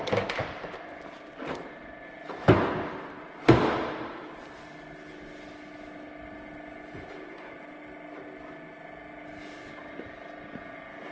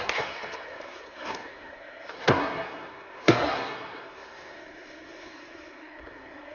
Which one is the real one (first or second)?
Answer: first